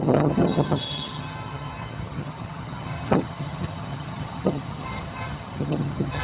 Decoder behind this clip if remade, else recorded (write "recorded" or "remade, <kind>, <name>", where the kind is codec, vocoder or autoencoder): remade, vocoder, HiFi-GAN